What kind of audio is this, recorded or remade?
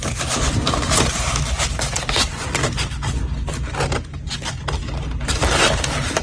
recorded